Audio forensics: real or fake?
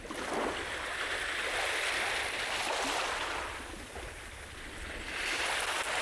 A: real